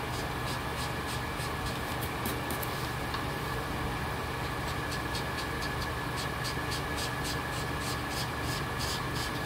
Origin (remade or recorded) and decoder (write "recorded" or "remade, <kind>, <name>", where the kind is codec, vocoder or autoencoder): recorded